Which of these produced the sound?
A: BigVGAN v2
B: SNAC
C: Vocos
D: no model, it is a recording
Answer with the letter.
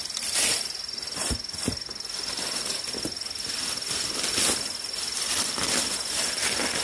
D